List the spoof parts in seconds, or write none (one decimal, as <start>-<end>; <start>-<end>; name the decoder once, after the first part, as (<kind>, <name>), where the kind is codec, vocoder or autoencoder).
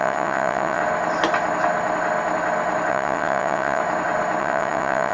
0.0-0.8 (vocoder, WaveNeXt); 2.9-3.8; 4.4-5.1